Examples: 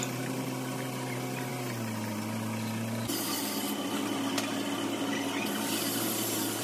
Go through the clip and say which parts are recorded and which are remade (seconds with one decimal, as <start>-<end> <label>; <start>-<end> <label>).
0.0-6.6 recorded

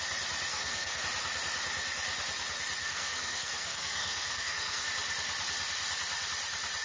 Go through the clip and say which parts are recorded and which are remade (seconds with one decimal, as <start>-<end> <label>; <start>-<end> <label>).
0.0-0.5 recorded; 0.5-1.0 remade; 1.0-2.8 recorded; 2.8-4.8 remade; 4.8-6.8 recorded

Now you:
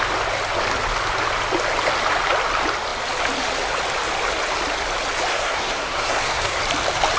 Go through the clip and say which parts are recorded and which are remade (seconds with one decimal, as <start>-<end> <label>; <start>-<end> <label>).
0.0-5.3 recorded; 5.3-6.6 remade; 6.6-7.2 recorded

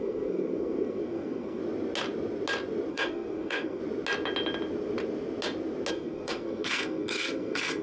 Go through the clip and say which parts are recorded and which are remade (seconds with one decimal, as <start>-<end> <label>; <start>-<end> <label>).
0.0-1.6 remade; 1.6-2.9 recorded; 2.9-3.8 remade; 3.8-5.9 recorded; 5.9-7.8 remade

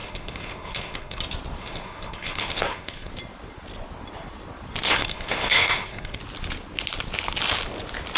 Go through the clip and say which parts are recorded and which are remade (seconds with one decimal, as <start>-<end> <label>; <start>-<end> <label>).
0.0-1.2 remade; 1.2-1.6 recorded; 1.6-3.1 remade; 3.1-4.9 recorded; 4.9-6.2 remade; 6.2-8.2 recorded

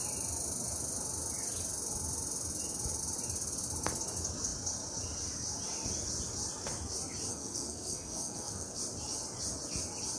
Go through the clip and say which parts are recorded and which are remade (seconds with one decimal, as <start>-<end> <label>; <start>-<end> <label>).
0.0-7.3 recorded; 7.3-8.8 remade; 8.8-10.2 recorded